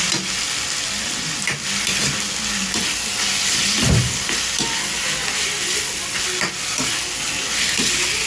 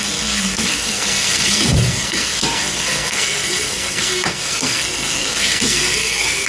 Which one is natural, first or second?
first